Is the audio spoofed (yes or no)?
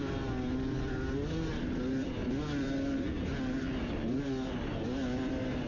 no